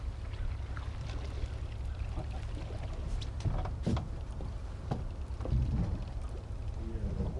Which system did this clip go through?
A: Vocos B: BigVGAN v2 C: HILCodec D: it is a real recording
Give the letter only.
D